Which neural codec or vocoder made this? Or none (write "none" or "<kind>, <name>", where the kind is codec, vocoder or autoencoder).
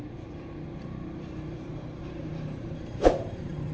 vocoder, BigVGAN v2